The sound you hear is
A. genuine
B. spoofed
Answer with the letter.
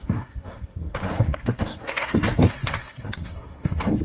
B